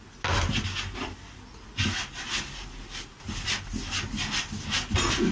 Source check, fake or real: real